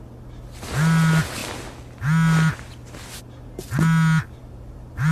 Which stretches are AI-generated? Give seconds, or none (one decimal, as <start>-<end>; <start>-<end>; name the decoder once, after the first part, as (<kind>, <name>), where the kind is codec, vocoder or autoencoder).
4.4-5.1 (vocoder, BigVGAN v2)